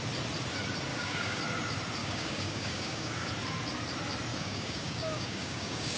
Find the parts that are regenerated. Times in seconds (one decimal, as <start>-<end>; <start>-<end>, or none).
0.9-1.4; 2.0-3.3; 4.3-6.0